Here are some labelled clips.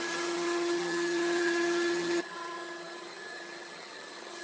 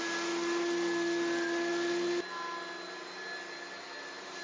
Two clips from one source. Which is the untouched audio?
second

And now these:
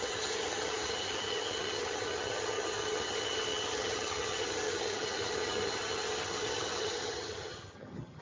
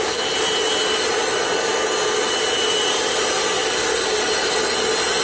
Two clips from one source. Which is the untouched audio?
second